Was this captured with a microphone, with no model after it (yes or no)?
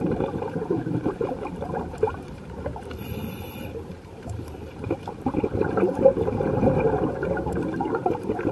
no